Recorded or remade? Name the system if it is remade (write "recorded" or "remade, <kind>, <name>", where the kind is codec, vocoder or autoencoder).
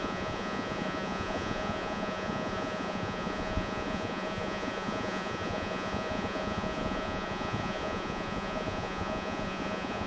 remade, vocoder, Vocos